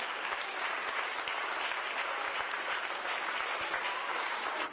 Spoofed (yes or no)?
no